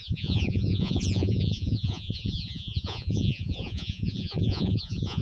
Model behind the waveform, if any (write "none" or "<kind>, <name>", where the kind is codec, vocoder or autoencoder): vocoder, Vocos